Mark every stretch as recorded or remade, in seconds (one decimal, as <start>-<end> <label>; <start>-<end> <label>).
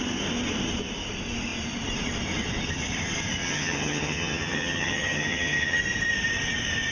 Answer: 0.0-3.4 recorded; 3.4-5.8 remade; 5.8-6.9 recorded